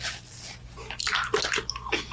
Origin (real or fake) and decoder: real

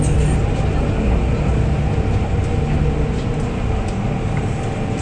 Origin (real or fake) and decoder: real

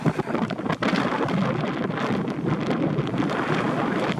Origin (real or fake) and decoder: real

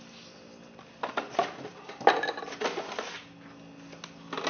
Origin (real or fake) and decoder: real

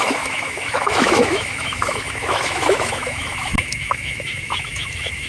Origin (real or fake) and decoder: fake, autoencoder, DAC-VAE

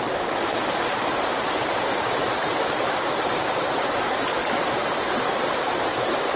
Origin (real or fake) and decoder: fake, vocoder, BigVGAN v2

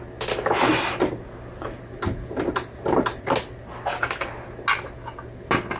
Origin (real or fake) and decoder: real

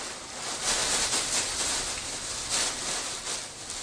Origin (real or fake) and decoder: real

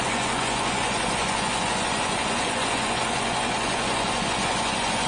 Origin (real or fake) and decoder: fake, vocoder, Vocos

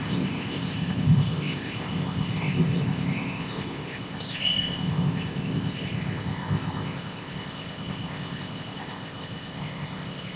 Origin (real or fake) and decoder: fake, codec, ZipCodec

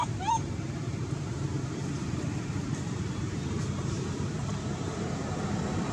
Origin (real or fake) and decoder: fake, vocoder, BigVGAN v2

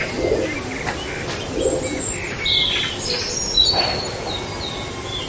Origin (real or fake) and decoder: real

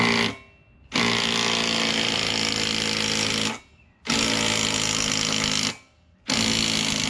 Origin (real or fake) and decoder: real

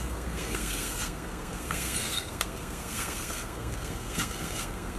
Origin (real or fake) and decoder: fake, codec, SNAC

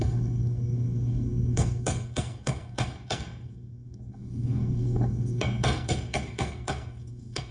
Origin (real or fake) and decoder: fake, codec, SNAC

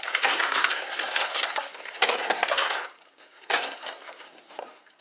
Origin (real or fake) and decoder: fake, codec, SNAC